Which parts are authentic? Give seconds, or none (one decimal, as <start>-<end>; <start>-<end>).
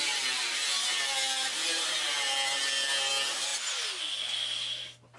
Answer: 3.1-5.2